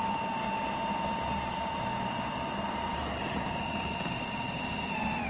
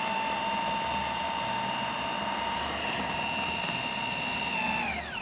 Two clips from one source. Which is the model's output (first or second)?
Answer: first